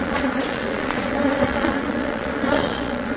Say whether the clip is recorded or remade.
remade